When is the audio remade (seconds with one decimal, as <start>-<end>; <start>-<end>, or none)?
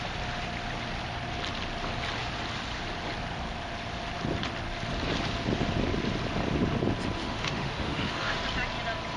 7.2-8.4